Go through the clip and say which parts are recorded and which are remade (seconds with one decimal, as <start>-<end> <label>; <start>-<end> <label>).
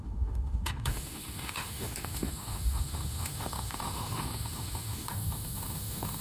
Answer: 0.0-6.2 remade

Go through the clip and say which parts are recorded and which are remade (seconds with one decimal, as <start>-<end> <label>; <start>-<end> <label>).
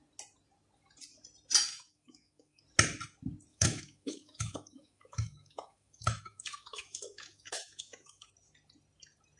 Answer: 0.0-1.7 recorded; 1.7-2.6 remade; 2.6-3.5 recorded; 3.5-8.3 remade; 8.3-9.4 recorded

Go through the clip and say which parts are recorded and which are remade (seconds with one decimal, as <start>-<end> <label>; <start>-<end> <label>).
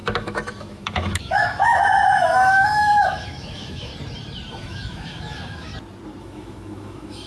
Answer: 0.0-3.9 remade; 3.9-4.5 recorded; 4.5-5.7 remade; 5.7-6.2 recorded; 6.2-7.3 remade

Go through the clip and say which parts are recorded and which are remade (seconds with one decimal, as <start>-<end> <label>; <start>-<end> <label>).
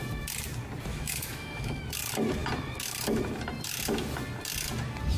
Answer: 0.0-0.9 recorded; 0.9-1.8 remade; 1.8-5.2 recorded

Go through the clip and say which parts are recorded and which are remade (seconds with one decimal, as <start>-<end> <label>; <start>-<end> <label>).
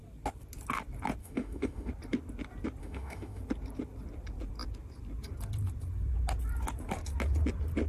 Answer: 0.0-1.2 recorded; 1.2-1.9 remade; 1.9-2.8 recorded; 2.8-3.4 remade; 3.4-7.9 recorded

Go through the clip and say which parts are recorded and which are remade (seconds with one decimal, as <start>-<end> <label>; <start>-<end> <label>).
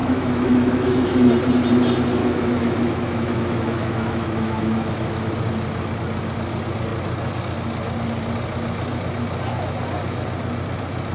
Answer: 0.0-1.3 remade; 1.3-2.2 recorded; 2.2-5.3 remade; 5.3-11.1 recorded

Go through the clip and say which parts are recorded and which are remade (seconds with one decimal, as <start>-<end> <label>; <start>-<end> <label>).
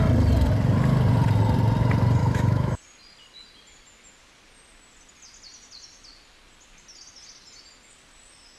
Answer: 0.0-2.2 recorded; 2.2-2.8 remade; 2.8-8.6 recorded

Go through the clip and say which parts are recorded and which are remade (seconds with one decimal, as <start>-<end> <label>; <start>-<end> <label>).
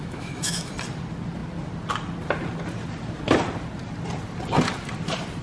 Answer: 0.0-0.7 remade; 0.7-5.4 recorded